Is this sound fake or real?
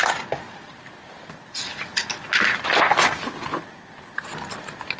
real